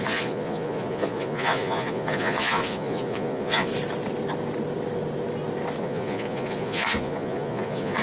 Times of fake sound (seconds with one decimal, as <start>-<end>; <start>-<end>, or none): 0.0-3.7; 5.8-8.0